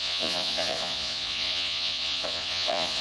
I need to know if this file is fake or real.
fake